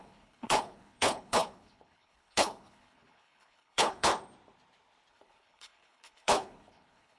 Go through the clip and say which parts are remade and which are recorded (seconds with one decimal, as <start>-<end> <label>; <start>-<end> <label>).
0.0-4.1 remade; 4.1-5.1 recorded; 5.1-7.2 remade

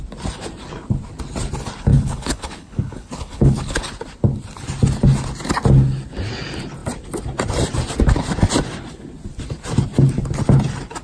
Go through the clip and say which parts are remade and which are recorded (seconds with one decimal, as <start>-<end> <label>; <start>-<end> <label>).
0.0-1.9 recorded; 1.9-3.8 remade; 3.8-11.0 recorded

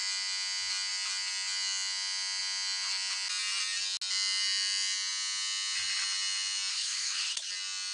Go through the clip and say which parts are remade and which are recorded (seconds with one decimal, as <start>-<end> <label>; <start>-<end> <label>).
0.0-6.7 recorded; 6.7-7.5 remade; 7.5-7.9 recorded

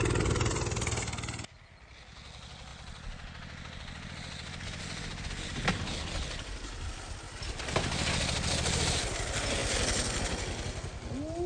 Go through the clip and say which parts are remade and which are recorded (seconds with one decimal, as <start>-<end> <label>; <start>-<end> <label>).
0.0-11.5 recorded